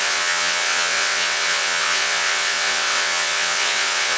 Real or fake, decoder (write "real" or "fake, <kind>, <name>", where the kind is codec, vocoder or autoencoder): fake, vocoder, WaveNeXt